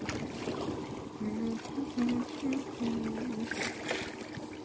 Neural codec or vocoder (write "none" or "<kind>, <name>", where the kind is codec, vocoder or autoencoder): none